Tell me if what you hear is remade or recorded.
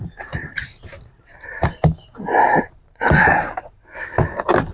remade